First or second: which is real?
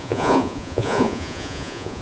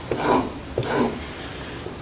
second